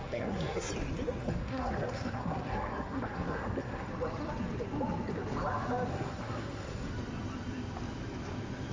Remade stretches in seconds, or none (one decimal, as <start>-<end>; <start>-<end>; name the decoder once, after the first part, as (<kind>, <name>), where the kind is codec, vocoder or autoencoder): 0.0-0.7 (codec, SNAC); 1.2-3.9; 5.9-6.9

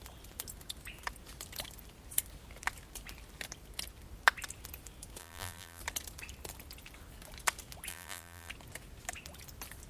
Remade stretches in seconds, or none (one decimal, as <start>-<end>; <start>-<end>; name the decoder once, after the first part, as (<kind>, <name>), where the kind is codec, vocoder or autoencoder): 5.2-5.8 (vocoder, BigVGAN v2); 7.9-8.5

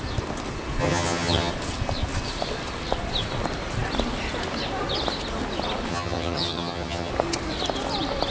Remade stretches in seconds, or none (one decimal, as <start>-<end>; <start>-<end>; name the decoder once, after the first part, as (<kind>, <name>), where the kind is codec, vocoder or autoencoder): 0.8-1.5 (vocoder, HiFi-GAN); 5.9-7.1

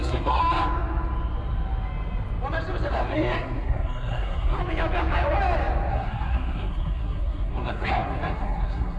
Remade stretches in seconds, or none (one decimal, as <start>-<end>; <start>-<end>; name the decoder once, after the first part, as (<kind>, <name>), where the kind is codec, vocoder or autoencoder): 0.0-0.4 (codec, SNAC); 2.9-4.6; 5.9-9.0